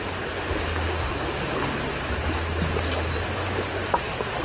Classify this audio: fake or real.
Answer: real